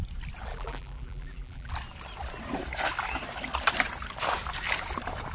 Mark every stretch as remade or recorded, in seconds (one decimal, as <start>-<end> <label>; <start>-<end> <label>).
0.0-0.5 recorded; 0.5-1.7 remade; 1.7-5.3 recorded